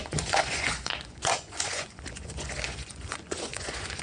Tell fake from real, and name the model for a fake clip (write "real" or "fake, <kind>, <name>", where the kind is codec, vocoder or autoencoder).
fake, vocoder, Vocos